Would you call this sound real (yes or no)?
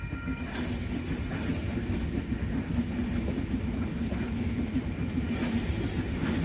yes